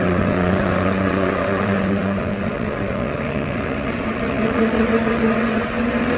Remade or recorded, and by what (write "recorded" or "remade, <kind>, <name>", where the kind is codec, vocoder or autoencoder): remade, vocoder, WaveNeXt